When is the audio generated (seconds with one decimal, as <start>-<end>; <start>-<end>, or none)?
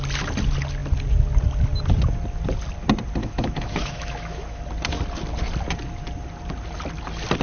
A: 3.2-4.6